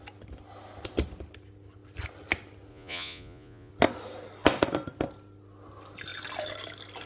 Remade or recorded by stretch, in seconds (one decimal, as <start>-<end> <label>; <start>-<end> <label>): 0.0-2.7 recorded; 2.7-3.7 remade; 3.7-7.1 recorded